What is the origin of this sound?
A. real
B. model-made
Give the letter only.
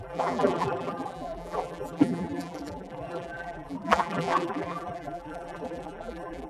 B